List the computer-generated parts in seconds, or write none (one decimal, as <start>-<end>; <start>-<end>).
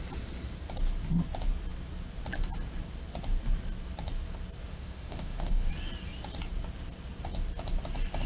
4.7-5.7